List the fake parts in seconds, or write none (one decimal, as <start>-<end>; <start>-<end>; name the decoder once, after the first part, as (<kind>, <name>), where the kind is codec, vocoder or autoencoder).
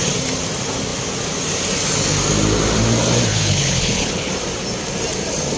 3.3-4.3 (codec, HILCodec)